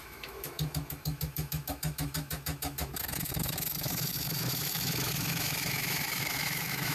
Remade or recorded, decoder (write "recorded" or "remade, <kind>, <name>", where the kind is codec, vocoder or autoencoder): remade, autoencoder, DAC-VAE